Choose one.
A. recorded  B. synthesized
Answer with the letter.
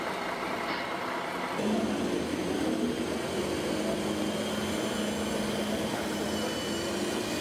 A